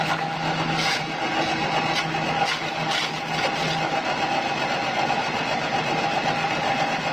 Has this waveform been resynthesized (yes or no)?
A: no